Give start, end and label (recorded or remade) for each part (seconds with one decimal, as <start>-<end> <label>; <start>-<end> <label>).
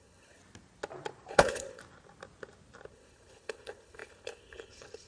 0.0-0.4 remade; 0.4-1.3 recorded; 1.3-1.8 remade; 1.8-2.9 recorded; 2.9-5.1 remade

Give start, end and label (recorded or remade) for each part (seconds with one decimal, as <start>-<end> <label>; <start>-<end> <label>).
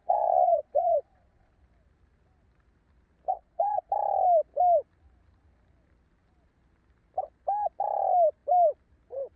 0.0-1.5 remade; 1.5-3.3 recorded; 3.3-3.9 remade; 3.9-9.4 recorded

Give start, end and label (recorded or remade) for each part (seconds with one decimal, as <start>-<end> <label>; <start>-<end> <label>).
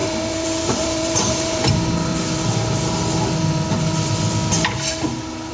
0.0-2.1 remade; 2.1-5.5 recorded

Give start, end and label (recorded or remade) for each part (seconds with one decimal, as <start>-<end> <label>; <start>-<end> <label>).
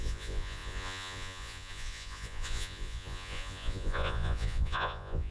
0.0-5.3 remade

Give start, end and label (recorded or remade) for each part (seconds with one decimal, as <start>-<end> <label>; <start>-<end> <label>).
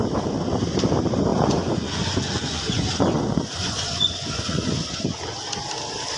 0.0-1.3 recorded; 1.3-5.0 remade; 5.0-6.2 recorded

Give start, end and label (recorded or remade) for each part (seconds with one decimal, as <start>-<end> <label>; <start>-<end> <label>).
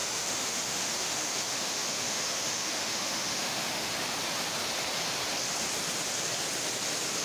0.0-3.9 remade; 3.9-7.2 recorded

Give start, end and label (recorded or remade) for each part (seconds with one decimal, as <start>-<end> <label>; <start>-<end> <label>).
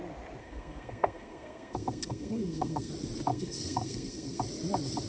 0.0-0.4 recorded; 0.4-2.9 remade; 2.9-3.3 recorded; 3.3-4.4 remade; 4.4-5.1 recorded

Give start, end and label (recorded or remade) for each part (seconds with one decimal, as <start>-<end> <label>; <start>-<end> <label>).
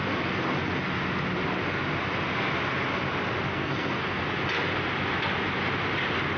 0.0-3.5 recorded; 3.5-4.2 remade; 4.2-6.4 recorded